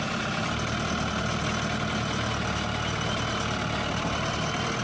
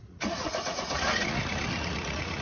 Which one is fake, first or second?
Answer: second